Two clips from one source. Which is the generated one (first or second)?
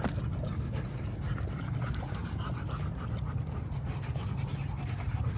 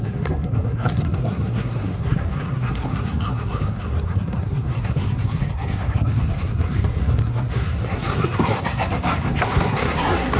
second